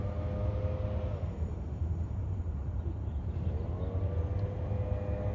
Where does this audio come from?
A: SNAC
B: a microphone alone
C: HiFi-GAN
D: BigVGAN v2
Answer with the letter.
B